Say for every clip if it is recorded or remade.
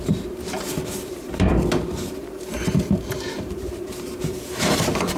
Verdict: remade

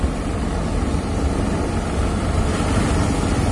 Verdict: recorded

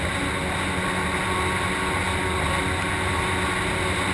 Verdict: recorded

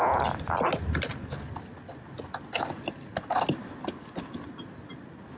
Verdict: recorded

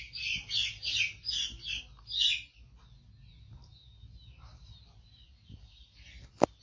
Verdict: recorded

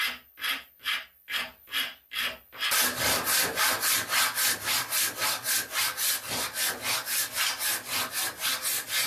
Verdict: recorded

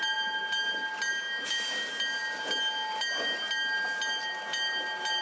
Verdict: recorded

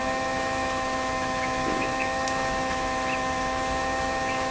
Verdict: remade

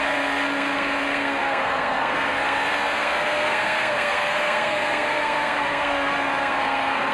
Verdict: remade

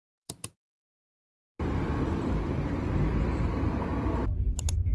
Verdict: remade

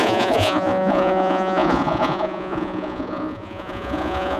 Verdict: remade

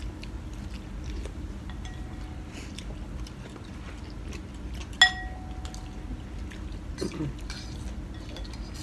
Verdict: recorded